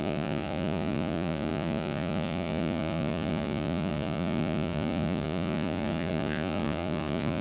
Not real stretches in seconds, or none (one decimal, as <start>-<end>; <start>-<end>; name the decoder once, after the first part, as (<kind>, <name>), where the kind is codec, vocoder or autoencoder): 0.0-7.4 (vocoder, Vocos)